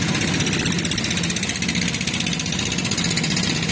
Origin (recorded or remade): recorded